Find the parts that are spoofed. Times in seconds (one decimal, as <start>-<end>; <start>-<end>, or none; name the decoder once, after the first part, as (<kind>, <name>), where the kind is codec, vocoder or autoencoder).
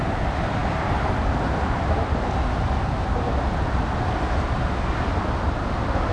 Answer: 0.6-2.8 (vocoder, BigVGAN v2)